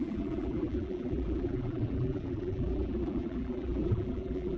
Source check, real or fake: fake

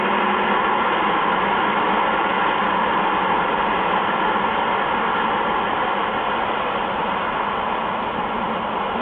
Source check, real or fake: real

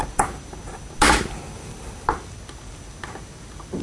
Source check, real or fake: real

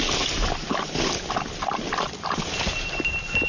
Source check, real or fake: fake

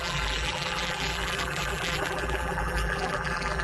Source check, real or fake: fake